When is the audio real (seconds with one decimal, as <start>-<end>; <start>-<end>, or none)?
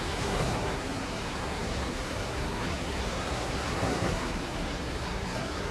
none